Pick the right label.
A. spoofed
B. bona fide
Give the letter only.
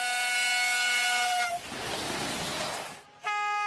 B